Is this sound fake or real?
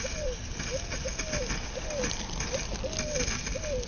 real